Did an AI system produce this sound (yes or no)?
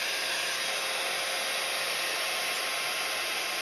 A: no